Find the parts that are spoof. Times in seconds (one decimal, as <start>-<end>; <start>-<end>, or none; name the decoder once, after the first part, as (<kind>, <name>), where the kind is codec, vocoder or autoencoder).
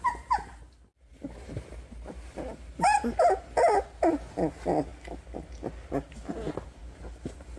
none